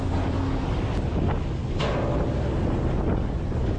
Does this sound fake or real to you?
real